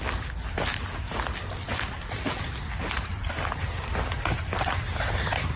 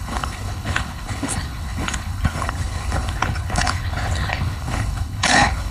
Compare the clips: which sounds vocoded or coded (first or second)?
second